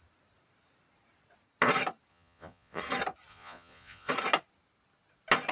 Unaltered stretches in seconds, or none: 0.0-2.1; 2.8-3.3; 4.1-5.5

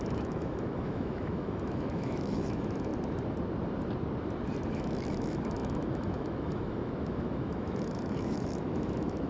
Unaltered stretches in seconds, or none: 2.9-4.7